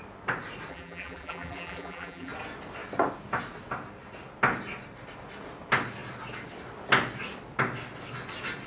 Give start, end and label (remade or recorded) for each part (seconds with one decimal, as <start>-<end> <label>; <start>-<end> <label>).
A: 0.0-0.7 recorded; 0.7-2.3 remade; 2.3-8.7 recorded

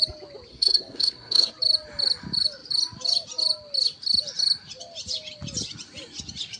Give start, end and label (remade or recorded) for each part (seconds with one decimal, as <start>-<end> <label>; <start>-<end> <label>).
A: 0.0-0.5 recorded; 0.5-1.5 remade; 1.5-6.6 recorded

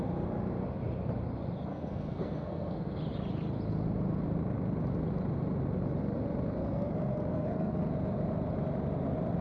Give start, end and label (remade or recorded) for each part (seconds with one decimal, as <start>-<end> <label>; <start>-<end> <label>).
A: 0.0-1.7 recorded; 1.7-3.0 remade; 3.0-6.6 recorded; 6.6-7.8 remade; 7.8-9.4 recorded

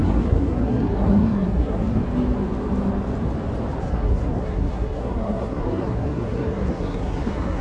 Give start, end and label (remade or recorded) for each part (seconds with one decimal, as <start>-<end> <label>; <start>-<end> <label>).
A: 0.0-2.0 remade; 2.0-3.8 recorded; 3.8-7.6 remade

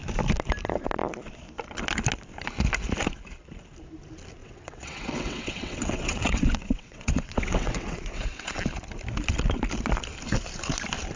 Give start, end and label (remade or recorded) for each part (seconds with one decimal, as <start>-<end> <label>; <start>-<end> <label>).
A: 0.0-4.4 recorded; 4.4-8.6 remade; 8.6-11.2 recorded

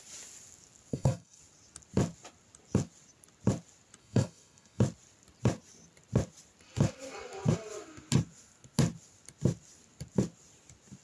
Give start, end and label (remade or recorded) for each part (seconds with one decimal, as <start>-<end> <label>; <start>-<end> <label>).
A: 0.0-0.9 recorded; 0.9-1.4 remade; 1.4-4.0 recorded; 4.0-4.8 remade; 4.8-11.0 recorded

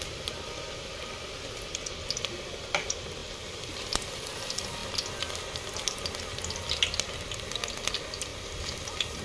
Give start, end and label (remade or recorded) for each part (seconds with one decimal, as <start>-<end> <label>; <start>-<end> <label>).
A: 0.0-8.3 recorded; 8.3-9.2 remade